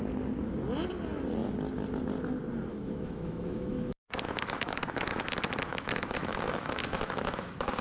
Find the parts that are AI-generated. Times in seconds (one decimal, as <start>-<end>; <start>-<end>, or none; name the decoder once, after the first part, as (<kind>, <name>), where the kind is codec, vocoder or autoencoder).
2.7-5.2 (autoencoder, DAC-VAE); 5.7-7.8